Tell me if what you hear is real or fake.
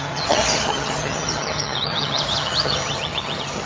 fake